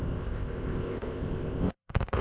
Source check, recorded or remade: remade